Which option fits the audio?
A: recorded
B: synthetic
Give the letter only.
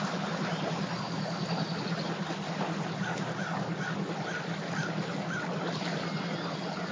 A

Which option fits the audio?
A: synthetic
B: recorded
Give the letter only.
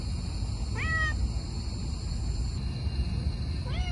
B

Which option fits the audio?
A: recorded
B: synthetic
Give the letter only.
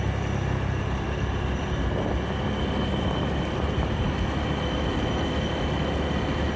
A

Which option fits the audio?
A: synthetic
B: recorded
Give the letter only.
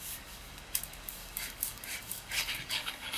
A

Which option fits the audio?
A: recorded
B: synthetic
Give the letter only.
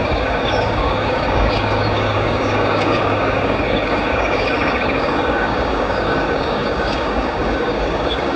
B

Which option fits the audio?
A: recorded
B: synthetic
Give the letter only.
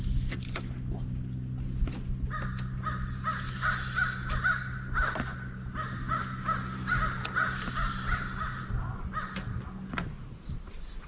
A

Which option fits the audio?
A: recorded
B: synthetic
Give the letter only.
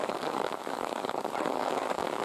B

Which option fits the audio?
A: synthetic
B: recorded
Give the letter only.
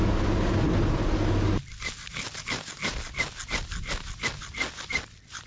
B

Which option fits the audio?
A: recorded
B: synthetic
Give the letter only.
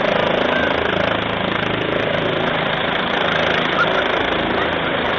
A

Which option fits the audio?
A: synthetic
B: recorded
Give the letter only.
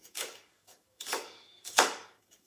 A